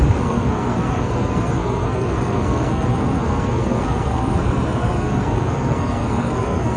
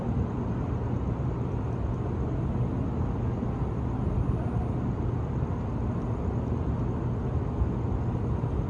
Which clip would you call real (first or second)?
second